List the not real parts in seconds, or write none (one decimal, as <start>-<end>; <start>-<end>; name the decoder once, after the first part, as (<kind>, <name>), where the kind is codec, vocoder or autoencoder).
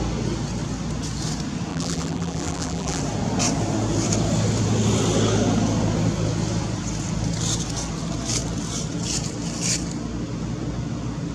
1.7-3.0 (vocoder, BigVGAN v2)